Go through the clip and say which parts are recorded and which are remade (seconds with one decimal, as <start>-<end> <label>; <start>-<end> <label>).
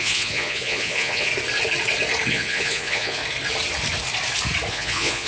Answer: 0.0-1.3 remade; 1.3-2.3 recorded; 2.3-3.2 remade; 3.2-4.7 recorded; 4.7-5.3 remade